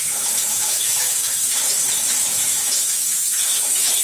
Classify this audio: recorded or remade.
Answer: remade